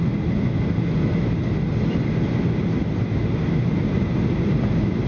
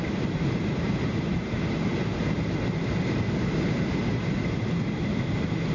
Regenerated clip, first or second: second